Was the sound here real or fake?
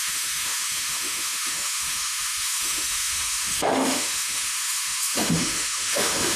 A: fake